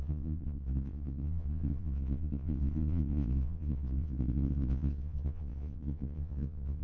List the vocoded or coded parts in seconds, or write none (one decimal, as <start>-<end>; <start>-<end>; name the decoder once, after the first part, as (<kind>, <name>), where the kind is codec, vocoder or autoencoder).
0.0-6.8 (vocoder, Vocos)